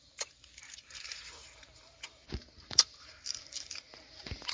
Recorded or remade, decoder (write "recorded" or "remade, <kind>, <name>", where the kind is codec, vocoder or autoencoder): remade, vocoder, BigVGAN v2